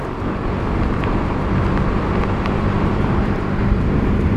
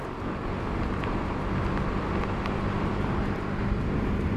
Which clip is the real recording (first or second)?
second